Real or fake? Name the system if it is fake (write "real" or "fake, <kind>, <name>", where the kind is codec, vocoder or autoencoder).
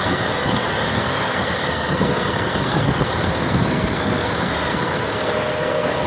fake, codec, SNAC